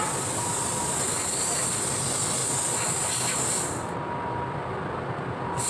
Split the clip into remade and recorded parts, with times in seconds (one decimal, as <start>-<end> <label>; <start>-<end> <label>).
0.0-5.7 recorded